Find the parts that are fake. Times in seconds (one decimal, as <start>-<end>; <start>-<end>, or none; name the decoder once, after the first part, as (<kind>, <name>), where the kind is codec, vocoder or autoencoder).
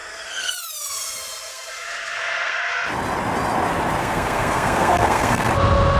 0.0-0.5 (codec, SNAC); 1.5-2.7; 4.0-5.5